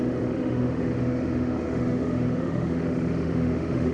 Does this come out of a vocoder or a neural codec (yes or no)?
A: yes